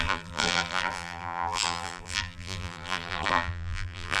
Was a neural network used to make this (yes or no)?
yes